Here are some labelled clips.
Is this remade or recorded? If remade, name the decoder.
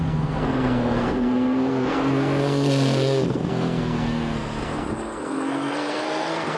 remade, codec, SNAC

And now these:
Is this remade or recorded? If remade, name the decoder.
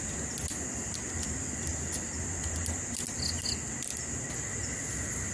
recorded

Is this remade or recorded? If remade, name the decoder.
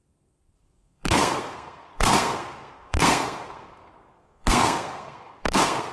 remade, codec, SNAC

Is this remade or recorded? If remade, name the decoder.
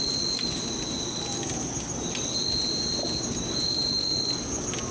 recorded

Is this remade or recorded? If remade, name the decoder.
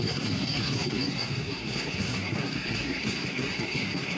remade, codec, SNAC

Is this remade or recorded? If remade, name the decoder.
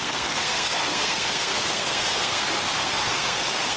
remade, codec, SNAC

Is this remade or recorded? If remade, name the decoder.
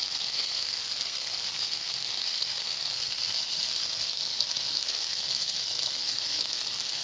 remade, codec, SNAC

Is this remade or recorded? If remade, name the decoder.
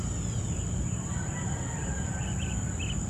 recorded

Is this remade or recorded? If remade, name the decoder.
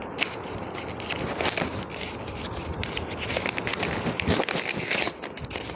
recorded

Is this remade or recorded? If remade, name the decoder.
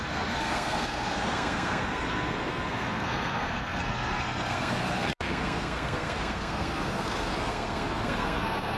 remade, codec, SNAC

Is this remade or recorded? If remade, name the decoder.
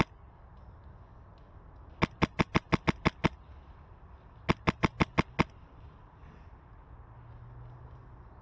recorded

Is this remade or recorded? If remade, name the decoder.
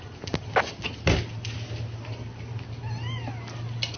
recorded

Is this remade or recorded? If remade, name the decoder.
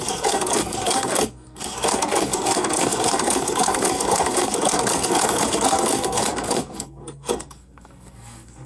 remade, codec, SNAC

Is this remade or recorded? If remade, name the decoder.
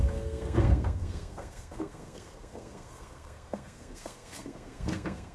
remade, codec, SNAC